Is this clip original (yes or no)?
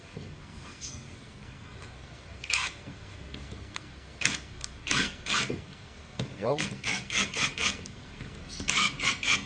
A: no